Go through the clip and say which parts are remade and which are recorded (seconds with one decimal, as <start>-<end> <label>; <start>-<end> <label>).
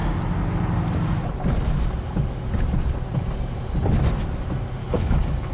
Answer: 0.0-4.8 recorded; 4.8-5.5 remade